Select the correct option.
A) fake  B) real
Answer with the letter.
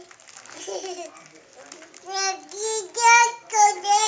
B